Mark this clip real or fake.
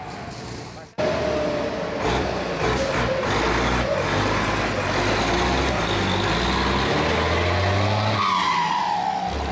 real